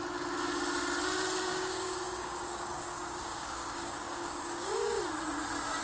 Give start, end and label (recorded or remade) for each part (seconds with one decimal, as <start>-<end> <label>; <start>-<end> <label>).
0.0-1.5 recorded; 1.5-5.0 remade; 5.0-5.8 recorded